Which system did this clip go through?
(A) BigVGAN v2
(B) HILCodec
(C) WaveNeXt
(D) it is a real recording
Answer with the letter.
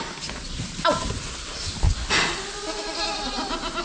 D